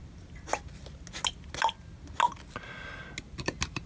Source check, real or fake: real